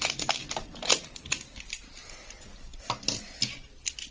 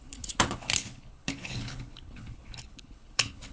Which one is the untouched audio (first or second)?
first